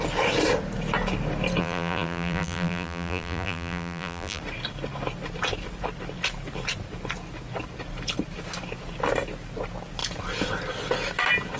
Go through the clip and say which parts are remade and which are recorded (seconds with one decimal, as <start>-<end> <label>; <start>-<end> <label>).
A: 0.0-1.6 recorded; 1.6-4.4 remade; 4.4-11.6 recorded